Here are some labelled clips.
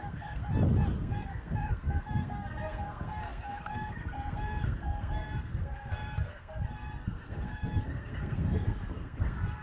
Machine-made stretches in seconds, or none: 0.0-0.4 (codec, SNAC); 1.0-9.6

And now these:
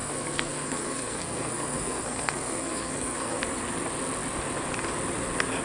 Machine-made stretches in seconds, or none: 0.0-3.4 (codec, SNAC)

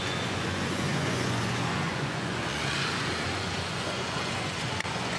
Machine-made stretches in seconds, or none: 0.0-5.2 (vocoder, Vocos)

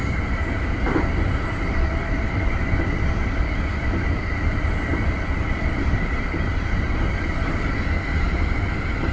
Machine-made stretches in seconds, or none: 0.0-4.9 (vocoder, BigVGAN v2); 5.6-9.1

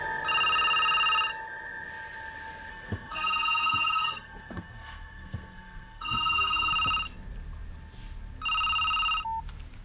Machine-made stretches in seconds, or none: 2.7-6.7 (codec, SNAC)